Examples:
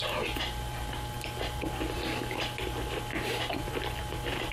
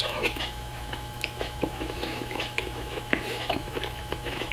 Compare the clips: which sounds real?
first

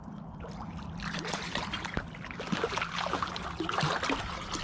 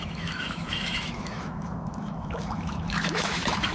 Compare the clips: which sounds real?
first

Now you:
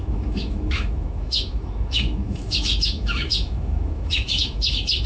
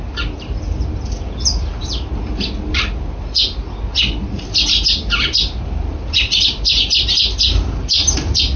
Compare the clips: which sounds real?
second